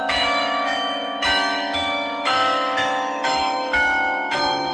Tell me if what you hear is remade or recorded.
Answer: remade